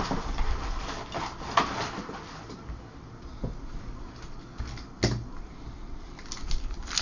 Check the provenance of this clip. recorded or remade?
recorded